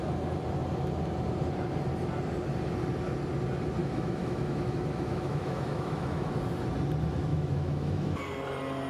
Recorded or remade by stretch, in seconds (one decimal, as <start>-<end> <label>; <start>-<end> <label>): 0.0-3.8 recorded; 3.8-6.3 remade; 6.3-7.3 recorded; 7.3-8.2 remade; 8.2-8.9 recorded